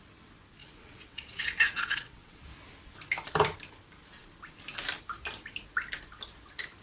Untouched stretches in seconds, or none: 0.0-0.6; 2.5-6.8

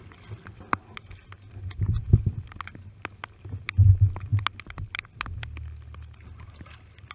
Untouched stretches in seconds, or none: 0.0-7.1

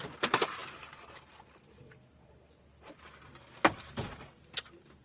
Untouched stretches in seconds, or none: 0.0-5.0